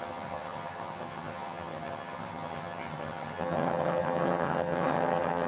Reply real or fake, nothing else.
fake